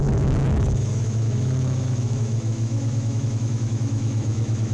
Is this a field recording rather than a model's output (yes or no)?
no